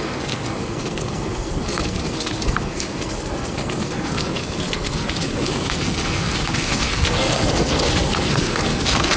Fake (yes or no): yes